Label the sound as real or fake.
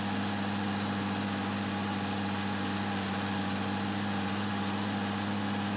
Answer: real